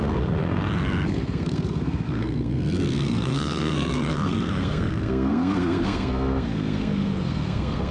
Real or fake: fake